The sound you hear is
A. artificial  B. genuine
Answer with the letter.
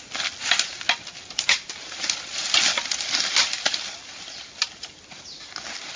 B